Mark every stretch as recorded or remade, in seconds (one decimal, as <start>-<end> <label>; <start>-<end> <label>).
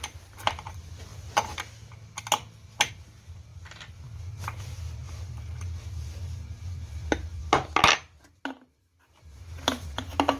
0.0-10.4 recorded